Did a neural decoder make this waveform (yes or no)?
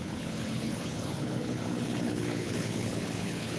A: yes